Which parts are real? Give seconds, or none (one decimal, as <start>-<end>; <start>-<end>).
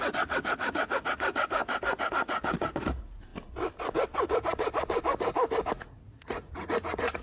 1.6-2.1; 3.3-5.7